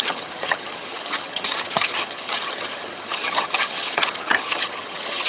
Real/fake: fake